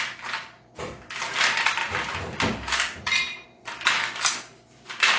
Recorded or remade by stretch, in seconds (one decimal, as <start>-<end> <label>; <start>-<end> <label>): 0.0-5.2 recorded